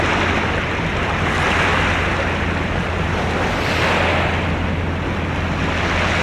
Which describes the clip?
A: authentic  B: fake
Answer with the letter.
A